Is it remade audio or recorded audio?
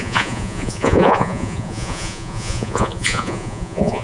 remade